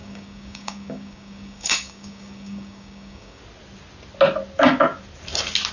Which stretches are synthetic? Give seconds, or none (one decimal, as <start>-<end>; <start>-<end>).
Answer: 0.0-3.4